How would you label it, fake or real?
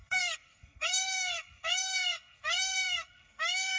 fake